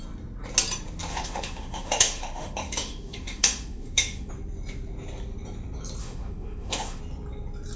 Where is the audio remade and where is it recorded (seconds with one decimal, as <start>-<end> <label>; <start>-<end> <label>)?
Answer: 0.0-1.1 recorded; 1.1-4.3 remade; 4.3-6.0 recorded; 6.0-7.0 remade; 7.0-7.8 recorded